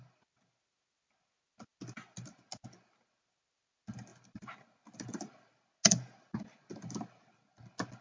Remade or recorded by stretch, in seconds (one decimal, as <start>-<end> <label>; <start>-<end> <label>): 0.0-8.0 recorded